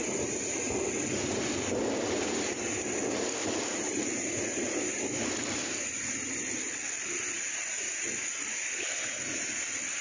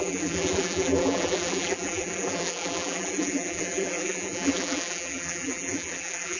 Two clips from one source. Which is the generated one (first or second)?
second